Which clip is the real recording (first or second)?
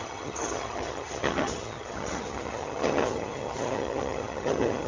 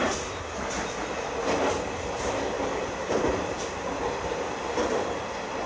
second